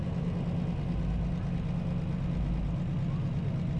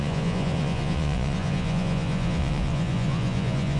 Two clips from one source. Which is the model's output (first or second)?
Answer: second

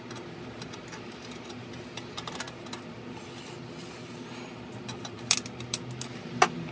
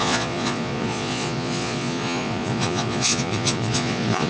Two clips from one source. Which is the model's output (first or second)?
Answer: second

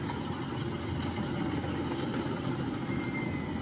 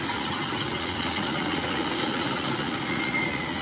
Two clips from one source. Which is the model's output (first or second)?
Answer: second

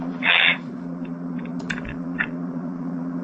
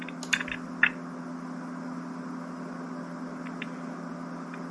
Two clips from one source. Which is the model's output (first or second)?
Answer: first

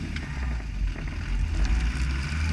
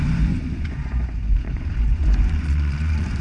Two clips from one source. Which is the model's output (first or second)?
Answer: second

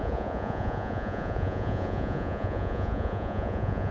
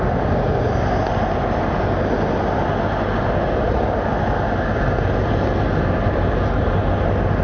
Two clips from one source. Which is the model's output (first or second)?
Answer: first